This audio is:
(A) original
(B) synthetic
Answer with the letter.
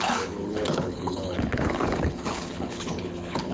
B